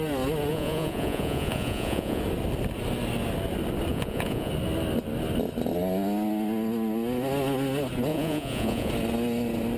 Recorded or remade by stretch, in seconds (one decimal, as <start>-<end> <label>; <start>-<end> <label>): 0.0-0.5 recorded; 0.5-2.2 remade; 2.2-3.9 recorded; 3.9-4.5 remade; 4.5-8.1 recorded; 8.1-8.9 remade; 8.9-9.8 recorded